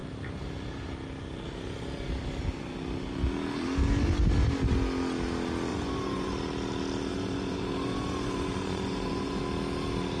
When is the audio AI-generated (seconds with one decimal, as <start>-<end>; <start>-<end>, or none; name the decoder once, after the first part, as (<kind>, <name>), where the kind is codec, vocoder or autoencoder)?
5.7-6.3 (vocoder, Vocos); 7.1-9.4